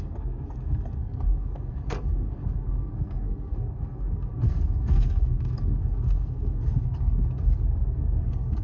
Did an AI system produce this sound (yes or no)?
yes